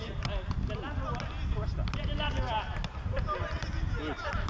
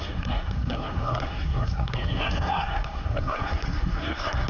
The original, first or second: first